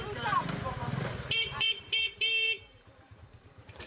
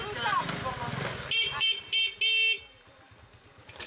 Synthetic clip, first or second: first